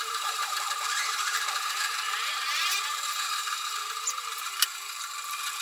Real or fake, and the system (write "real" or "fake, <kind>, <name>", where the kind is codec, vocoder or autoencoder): fake, vocoder, BigVGAN v2